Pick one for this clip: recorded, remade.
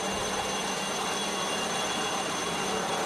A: recorded